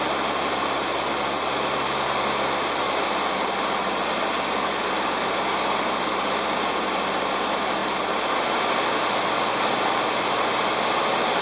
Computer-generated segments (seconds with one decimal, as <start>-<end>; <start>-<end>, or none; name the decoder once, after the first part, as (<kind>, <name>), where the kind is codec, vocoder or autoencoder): none